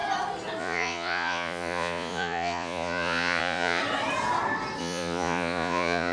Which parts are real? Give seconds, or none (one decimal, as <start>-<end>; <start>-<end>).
0.0-0.6; 3.8-4.8